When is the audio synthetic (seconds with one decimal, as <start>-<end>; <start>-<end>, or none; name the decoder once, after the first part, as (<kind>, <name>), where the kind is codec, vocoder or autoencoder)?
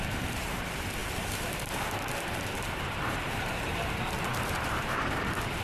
0.0-5.6 (vocoder, BigVGAN v2)